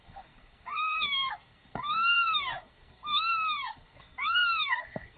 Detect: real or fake fake